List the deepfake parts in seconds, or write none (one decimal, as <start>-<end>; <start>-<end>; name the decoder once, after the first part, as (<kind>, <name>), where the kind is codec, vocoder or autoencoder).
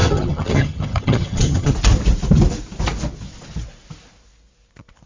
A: 0.0-1.7 (vocoder, HiFi-GAN)